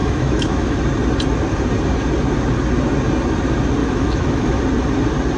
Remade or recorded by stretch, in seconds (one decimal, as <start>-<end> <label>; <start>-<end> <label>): 0.0-0.8 remade; 0.8-3.8 recorded; 3.8-4.6 remade; 4.6-5.4 recorded

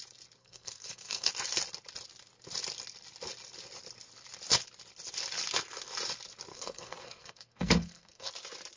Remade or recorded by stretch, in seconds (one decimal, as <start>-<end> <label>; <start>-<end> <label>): 0.0-0.4 recorded; 0.4-1.3 remade; 1.3-6.5 recorded; 6.5-8.3 remade; 8.3-8.8 recorded

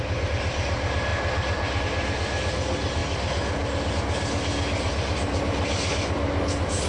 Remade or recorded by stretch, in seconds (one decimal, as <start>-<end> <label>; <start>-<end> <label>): 0.0-6.9 recorded

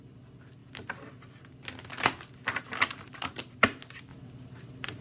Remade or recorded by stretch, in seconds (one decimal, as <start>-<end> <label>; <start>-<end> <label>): 0.0-5.0 recorded

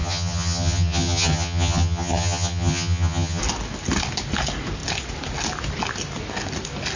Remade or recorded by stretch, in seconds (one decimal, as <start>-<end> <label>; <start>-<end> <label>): 0.0-3.4 remade; 3.4-7.0 recorded

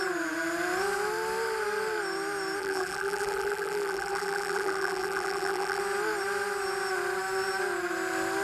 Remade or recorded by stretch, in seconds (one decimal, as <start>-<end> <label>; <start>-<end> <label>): 0.0-2.6 recorded; 2.6-5.8 remade; 5.8-8.4 recorded

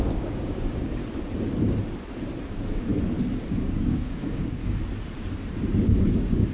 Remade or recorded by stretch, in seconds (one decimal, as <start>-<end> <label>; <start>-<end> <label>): 0.0-1.0 remade; 1.0-2.4 recorded; 2.4-2.9 remade; 2.9-3.5 recorded; 3.5-4.6 remade; 4.6-5.8 recorded; 5.8-6.5 remade

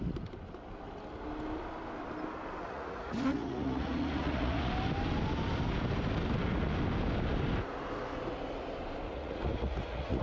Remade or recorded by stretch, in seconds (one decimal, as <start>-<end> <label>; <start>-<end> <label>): 0.0-2.6 recorded; 2.6-4.7 remade; 4.7-9.1 recorded; 9.1-10.2 remade